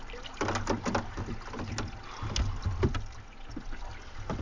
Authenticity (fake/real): real